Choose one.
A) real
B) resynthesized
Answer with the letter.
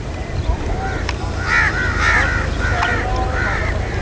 A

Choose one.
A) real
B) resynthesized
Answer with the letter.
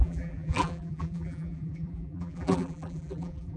B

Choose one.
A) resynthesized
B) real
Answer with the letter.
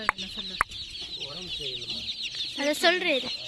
B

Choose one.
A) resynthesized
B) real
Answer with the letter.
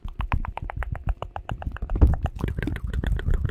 A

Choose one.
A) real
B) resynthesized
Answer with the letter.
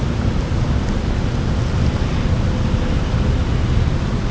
A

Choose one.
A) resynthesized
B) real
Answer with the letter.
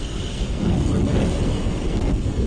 A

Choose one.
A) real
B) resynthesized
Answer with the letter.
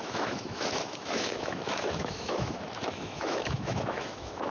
B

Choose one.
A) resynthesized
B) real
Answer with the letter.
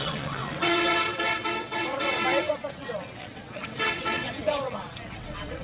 A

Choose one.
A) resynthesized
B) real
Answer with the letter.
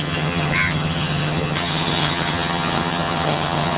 A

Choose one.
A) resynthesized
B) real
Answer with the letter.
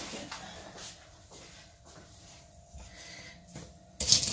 B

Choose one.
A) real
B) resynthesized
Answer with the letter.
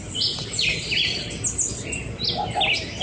A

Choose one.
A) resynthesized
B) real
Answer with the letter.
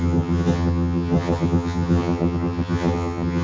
A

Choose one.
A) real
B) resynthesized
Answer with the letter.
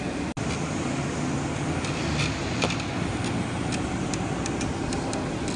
A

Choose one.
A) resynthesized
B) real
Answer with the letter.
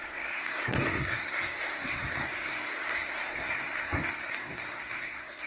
A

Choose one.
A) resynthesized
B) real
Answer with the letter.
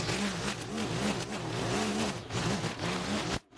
B